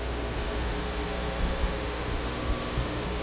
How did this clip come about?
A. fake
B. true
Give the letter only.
A